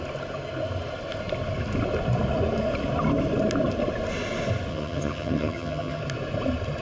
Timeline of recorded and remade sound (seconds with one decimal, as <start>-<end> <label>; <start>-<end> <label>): 0.0-4.7 recorded; 4.7-6.0 remade; 6.0-6.8 recorded